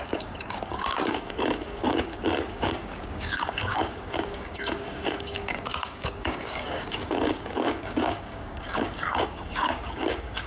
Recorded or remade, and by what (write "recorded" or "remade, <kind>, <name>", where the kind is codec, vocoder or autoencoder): remade, codec, DAC